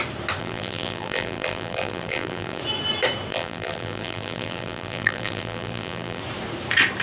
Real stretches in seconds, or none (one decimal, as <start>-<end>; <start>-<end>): 0.0-0.4; 2.6-3.3; 6.2-7.0